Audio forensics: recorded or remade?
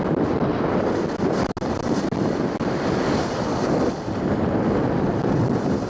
recorded